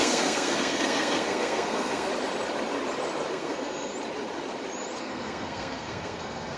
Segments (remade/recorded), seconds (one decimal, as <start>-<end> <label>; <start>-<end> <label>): 0.0-2.1 remade; 2.1-3.3 recorded; 3.3-3.9 remade; 3.9-5.0 recorded; 5.0-6.6 remade